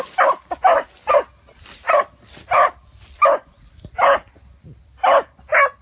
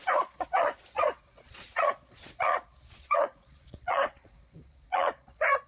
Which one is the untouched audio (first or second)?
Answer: first